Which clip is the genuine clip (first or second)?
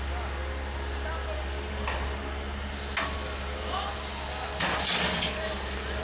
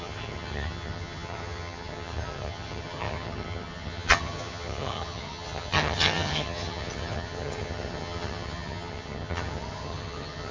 first